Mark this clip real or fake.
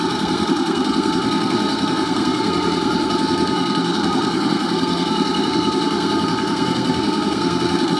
fake